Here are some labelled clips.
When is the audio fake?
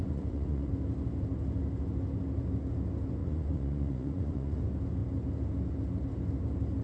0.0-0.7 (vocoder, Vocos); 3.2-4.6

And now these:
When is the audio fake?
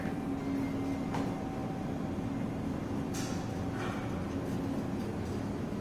none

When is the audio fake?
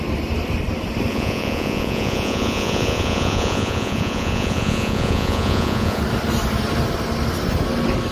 1.1-6.0 (vocoder, Vocos)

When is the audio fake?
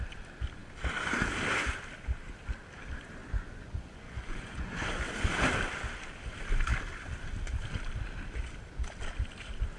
3.2-4.9 (vocoder, Vocos)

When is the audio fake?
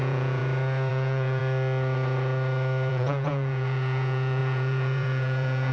0.0-0.4 (vocoder, Vocos); 0.9-1.4; 2.9-5.7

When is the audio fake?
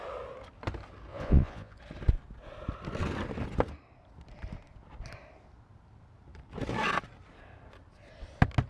1.1-1.8 (vocoder, Vocos)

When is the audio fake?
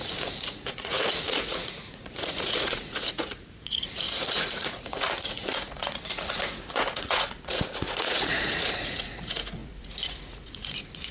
0.0-11.1 (vocoder, Vocos)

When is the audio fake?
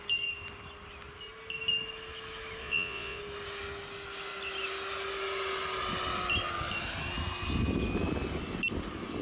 2.6-3.2 (vocoder, Vocos)